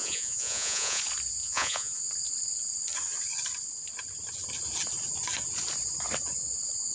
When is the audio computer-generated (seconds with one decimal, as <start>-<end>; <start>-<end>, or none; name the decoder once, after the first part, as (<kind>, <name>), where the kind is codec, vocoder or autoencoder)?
0.0-1.0 (vocoder, Vocos); 1.4-2.0